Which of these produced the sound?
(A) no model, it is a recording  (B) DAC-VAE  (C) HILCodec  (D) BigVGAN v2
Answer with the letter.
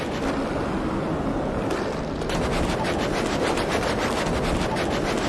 A